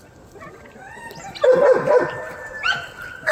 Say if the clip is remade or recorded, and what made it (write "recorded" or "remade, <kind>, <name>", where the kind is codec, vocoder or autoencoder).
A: recorded